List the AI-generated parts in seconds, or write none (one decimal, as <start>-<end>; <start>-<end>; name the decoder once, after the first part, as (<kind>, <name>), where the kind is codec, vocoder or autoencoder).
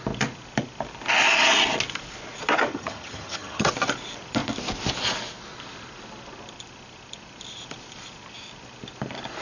2.7-3.7 (vocoder, HiFi-GAN)